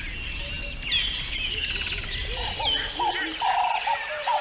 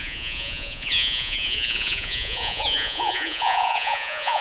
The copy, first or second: second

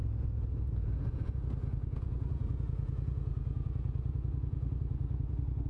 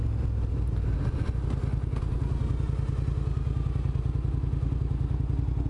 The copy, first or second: first